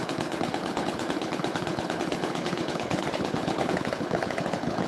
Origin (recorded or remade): remade